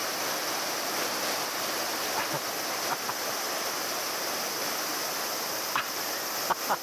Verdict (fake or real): real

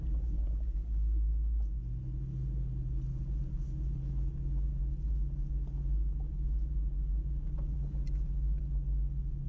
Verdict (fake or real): real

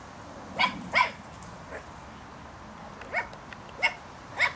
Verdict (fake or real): real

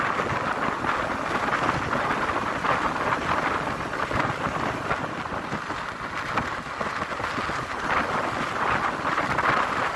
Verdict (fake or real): real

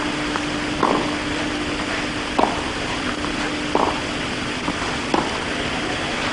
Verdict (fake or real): real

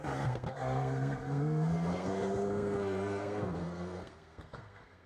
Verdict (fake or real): fake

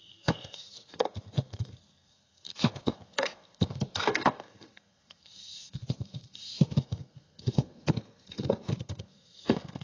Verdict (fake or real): fake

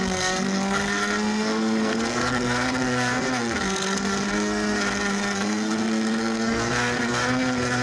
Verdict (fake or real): fake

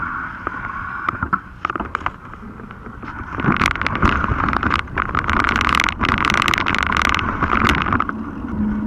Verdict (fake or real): real